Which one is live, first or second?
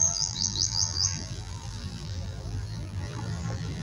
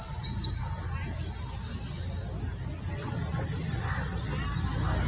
second